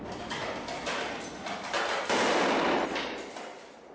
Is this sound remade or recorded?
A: recorded